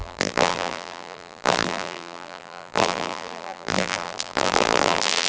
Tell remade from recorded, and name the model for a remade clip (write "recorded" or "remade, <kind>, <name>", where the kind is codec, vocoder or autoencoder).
remade, vocoder, BigVGAN v2